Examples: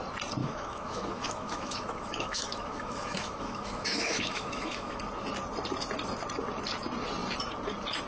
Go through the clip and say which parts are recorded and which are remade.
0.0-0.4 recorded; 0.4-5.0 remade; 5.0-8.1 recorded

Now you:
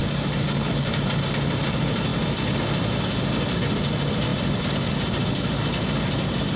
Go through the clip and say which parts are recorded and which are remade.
0.0-6.6 recorded

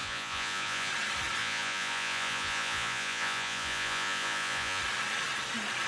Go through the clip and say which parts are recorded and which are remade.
0.0-0.9 remade; 0.9-1.4 recorded; 1.4-4.8 remade; 4.8-5.9 recorded